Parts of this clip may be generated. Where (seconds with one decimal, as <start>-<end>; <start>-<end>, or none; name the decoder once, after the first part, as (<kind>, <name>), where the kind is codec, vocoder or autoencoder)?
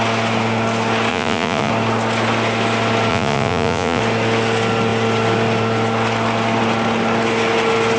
1.1-1.7 (vocoder, Vocos); 3.1-4.0